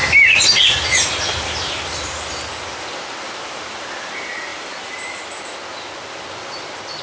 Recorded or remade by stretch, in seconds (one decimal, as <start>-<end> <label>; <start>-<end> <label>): 0.0-4.5 recorded; 4.5-5.4 remade; 5.4-7.0 recorded